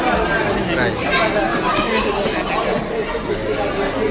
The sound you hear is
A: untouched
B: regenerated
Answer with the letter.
A